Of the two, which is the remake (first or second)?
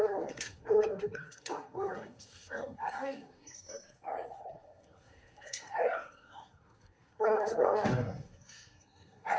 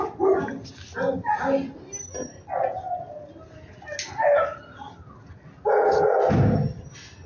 first